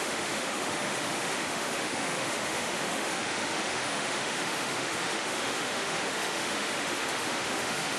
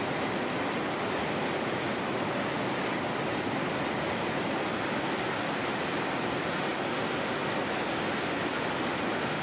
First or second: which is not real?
first